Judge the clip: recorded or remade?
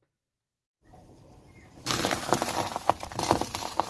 remade